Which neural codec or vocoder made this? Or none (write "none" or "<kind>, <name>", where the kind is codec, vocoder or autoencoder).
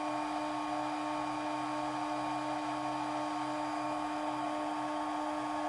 none